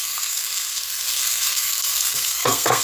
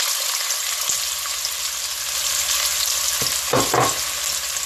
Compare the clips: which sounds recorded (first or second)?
second